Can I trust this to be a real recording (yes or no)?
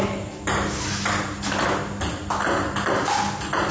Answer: yes